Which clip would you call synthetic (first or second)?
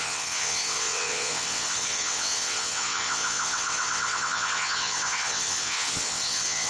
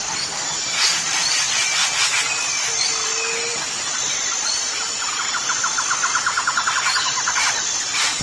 first